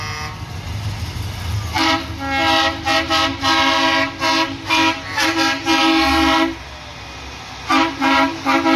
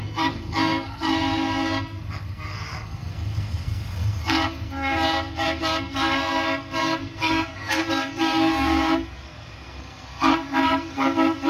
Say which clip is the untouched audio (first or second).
first